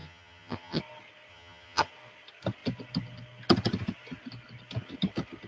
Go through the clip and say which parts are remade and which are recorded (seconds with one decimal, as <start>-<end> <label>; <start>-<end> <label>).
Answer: 0.0-0.8 remade; 0.8-1.3 recorded; 1.3-1.9 remade; 1.9-5.5 recorded